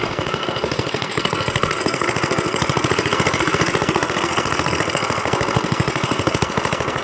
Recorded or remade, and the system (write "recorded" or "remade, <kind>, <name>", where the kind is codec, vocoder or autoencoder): remade, codec, SNAC